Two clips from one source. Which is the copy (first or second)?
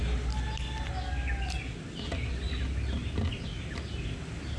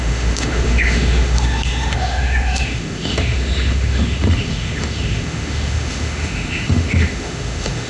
second